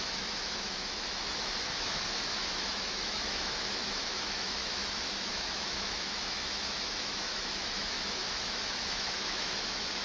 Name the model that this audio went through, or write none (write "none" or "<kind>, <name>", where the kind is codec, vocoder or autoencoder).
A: autoencoder, DAC-VAE